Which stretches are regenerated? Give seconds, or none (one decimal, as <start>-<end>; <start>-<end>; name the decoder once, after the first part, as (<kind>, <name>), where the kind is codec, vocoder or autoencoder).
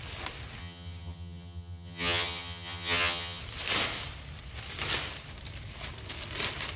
0.6-3.4 (vocoder, HiFi-GAN)